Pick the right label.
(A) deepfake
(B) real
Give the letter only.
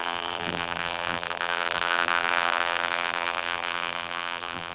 A